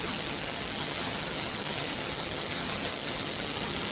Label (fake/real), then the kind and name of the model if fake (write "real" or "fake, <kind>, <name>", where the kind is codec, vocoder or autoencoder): fake, vocoder, HiFi-GAN